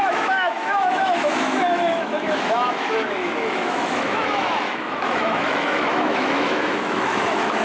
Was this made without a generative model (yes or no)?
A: no